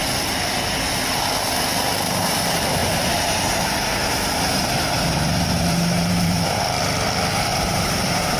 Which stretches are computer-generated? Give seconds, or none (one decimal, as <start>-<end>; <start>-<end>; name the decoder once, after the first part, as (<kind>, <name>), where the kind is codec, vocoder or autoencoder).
2.8-6.5 (vocoder, BigVGAN v2); 7.5-8.4